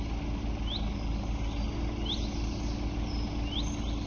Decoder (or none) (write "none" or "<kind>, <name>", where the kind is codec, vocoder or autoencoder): none